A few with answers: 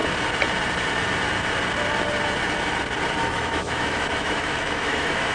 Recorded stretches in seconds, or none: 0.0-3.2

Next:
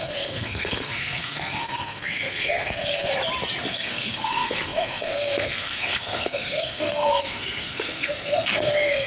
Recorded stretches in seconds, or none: 3.1-3.7

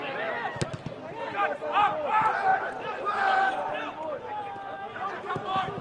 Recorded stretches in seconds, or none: 0.0-5.8

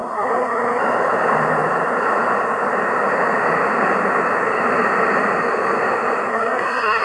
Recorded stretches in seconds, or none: 0.8-6.3

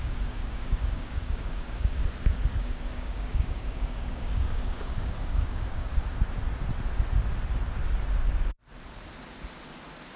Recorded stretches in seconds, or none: 2.0-2.6; 6.0-10.2